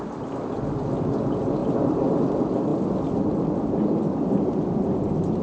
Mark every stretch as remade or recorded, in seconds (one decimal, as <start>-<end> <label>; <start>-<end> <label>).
0.0-1.6 recorded; 1.6-2.1 remade; 2.1-5.4 recorded

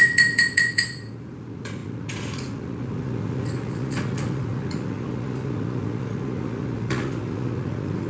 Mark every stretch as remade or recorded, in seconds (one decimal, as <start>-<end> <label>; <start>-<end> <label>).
0.0-8.1 remade

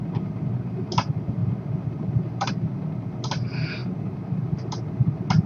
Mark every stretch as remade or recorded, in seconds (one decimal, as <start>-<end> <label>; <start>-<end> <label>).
0.0-5.5 recorded

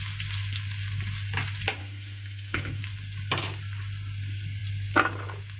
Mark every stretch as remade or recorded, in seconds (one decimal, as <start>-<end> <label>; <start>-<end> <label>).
0.0-1.8 recorded; 1.8-2.8 remade; 2.8-5.6 recorded

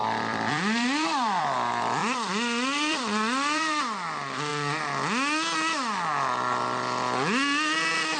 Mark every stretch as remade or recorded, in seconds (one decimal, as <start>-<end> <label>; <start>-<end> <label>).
0.0-1.4 remade; 1.4-2.0 recorded; 2.0-3.8 remade; 3.8-8.2 recorded